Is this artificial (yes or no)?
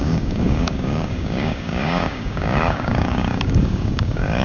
yes